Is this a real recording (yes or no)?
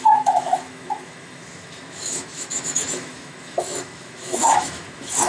no